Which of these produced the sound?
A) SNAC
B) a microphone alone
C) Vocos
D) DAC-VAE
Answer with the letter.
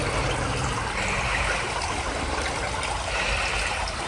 B